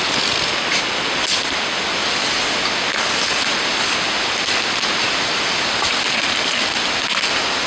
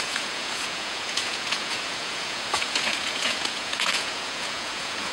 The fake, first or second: second